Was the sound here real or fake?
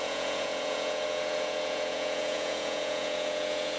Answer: fake